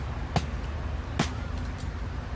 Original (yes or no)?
yes